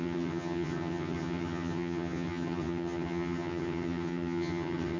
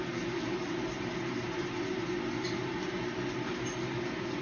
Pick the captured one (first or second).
second